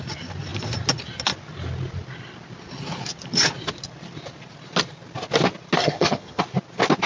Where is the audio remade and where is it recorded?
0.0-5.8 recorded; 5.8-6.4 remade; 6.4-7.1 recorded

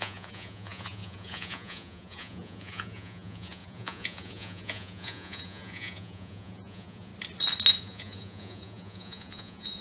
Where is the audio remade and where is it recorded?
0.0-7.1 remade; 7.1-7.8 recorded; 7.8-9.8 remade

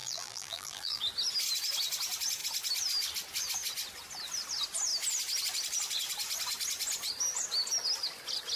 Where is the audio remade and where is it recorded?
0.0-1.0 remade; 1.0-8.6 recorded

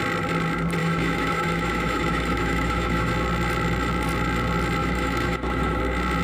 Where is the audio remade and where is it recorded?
0.0-0.8 recorded; 0.8-3.1 remade; 3.1-4.8 recorded; 4.8-5.8 remade; 5.8-6.2 recorded

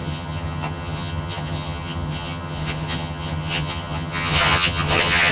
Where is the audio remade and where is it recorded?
0.0-5.3 remade

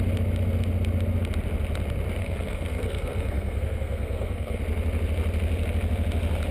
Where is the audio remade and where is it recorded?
0.0-2.2 recorded; 2.2-4.6 remade; 4.6-6.5 recorded

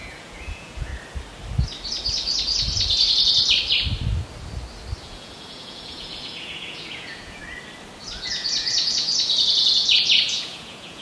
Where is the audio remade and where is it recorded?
0.0-0.9 remade; 0.9-5.0 recorded; 5.0-7.4 remade; 7.4-8.0 recorded; 8.0-11.0 remade

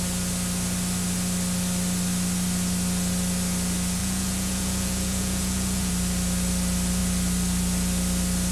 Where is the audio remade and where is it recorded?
0.0-4.0 recorded; 4.0-5.9 remade; 5.9-8.5 recorded